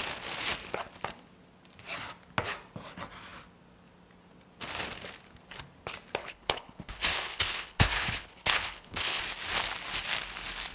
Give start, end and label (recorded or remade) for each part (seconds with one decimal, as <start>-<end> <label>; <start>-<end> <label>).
0.0-6.2 recorded; 6.2-9.2 remade; 9.2-10.7 recorded